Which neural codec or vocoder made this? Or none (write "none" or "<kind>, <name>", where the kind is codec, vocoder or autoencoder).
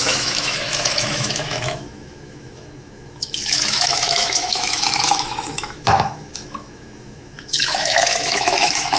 autoencoder, DAC-VAE